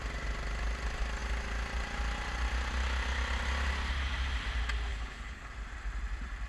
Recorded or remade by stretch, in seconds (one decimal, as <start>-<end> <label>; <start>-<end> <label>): 0.0-4.9 recorded; 4.9-5.5 remade; 5.5-6.5 recorded